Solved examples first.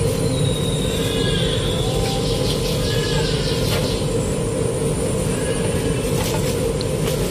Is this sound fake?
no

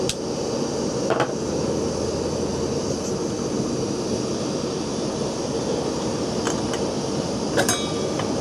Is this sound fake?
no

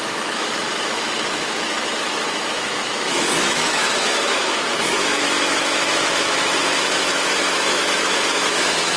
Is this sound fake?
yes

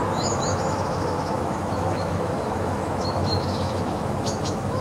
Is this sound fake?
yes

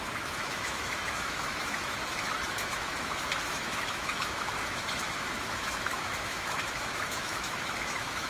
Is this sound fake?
yes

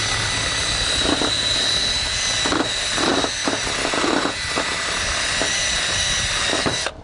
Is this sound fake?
no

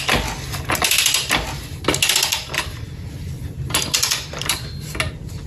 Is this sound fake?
no